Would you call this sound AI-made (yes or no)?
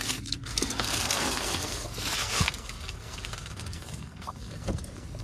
yes